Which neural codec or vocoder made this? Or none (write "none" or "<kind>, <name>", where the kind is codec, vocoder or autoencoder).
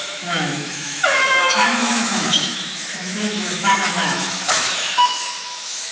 autoencoder, DAC-VAE